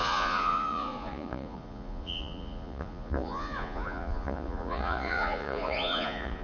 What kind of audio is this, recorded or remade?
remade